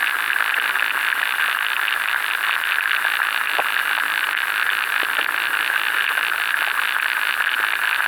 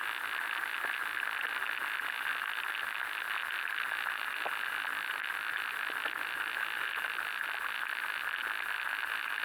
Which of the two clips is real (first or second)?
second